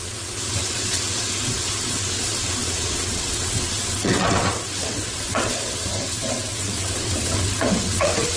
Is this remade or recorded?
remade